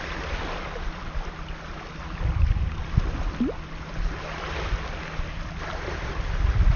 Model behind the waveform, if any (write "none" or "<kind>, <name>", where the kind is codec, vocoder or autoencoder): none